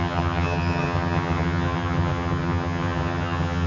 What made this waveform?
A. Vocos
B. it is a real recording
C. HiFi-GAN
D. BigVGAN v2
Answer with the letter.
C